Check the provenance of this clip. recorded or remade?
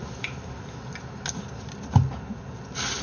recorded